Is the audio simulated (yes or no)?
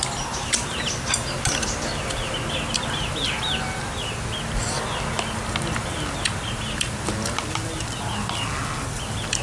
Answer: no